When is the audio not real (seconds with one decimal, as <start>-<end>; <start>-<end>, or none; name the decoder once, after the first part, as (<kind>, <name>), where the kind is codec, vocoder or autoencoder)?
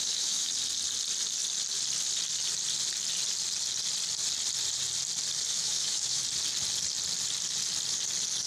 0.0-0.5 (autoencoder, DAC-VAE); 5.5-6.2